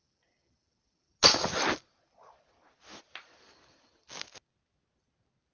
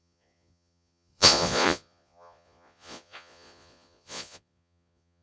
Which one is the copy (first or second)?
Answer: second